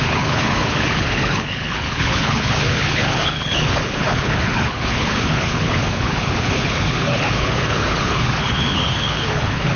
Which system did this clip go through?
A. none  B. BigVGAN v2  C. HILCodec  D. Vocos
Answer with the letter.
C